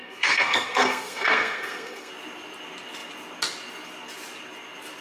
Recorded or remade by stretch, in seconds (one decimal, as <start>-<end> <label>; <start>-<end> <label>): 0.0-2.1 remade; 2.1-5.0 recorded